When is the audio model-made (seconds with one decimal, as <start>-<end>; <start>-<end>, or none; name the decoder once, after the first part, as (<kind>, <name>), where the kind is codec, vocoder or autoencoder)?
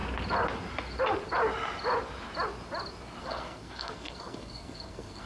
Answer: 3.2-5.3 (codec, SNAC)